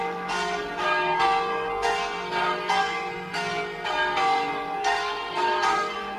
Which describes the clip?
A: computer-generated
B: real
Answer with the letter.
A